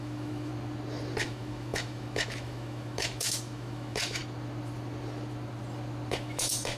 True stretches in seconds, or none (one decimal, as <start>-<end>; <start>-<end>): 0.5-1.2; 4.2-6.1